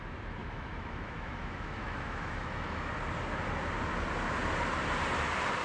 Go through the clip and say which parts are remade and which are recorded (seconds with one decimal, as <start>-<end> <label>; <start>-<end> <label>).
0.0-0.4 recorded; 0.4-2.9 remade; 2.9-5.6 recorded